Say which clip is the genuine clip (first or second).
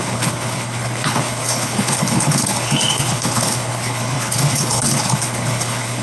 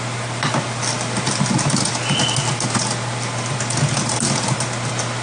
second